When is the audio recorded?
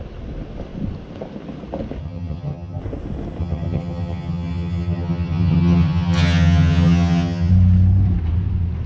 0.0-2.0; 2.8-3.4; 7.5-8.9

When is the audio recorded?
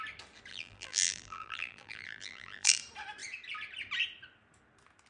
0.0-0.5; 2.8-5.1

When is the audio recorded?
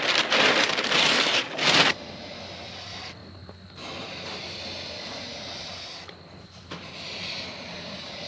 3.2-8.3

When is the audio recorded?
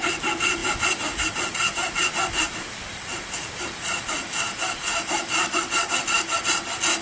0.0-7.0